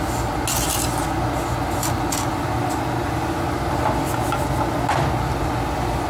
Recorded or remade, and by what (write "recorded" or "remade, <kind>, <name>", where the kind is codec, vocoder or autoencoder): recorded